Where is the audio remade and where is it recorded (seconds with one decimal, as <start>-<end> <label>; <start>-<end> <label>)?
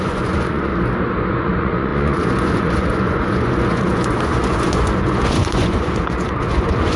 0.0-0.7 remade; 0.7-1.3 recorded; 1.3-7.0 remade